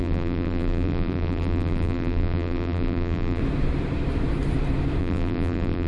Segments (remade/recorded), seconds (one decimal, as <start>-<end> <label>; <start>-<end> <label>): 0.0-3.4 remade; 3.4-5.0 recorded; 5.0-5.9 remade